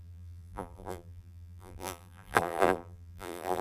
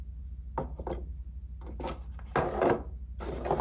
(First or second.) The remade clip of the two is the first